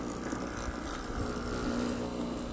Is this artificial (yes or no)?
no